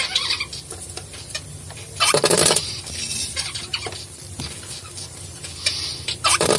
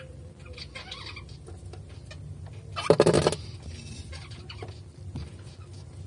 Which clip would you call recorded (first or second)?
second